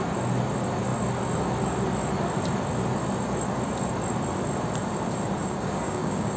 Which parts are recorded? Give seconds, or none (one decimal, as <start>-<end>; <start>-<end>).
0.0-5.4